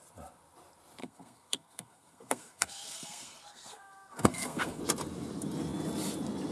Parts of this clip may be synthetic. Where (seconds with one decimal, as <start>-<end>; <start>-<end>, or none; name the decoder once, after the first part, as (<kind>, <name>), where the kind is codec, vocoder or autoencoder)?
1.0-4.8 (codec, SNAC)